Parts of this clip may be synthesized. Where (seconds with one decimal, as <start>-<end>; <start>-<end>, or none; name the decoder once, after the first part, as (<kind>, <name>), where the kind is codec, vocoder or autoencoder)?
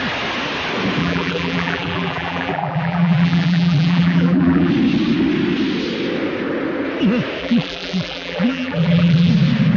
1.0-4.7 (vocoder, BigVGAN v2); 7.4-9.3